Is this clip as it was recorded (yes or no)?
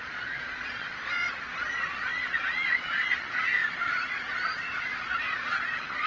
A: no